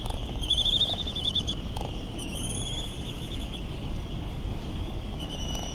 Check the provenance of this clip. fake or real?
fake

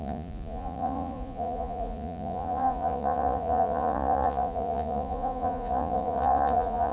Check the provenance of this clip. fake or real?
fake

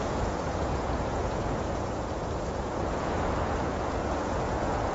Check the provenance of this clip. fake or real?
fake